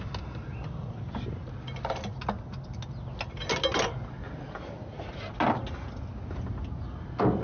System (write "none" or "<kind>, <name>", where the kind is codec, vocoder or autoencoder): none